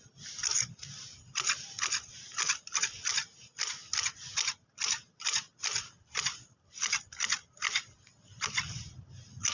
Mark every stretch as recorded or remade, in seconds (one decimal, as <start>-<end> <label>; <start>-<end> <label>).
0.0-9.5 recorded